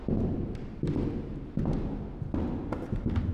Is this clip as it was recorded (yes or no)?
yes